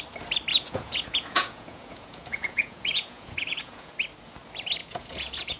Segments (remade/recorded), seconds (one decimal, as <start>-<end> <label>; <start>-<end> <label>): 0.0-0.5 recorded; 0.5-3.9 remade; 3.9-4.8 recorded; 4.8-5.6 remade